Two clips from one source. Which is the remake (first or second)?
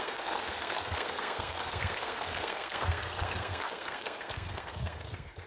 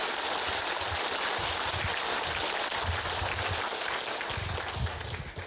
first